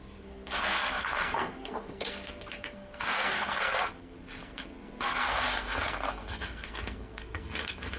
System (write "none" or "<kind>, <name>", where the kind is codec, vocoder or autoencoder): codec, SNAC